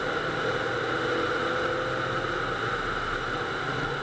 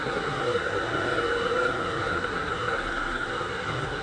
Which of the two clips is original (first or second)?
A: first